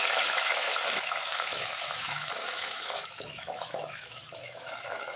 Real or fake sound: fake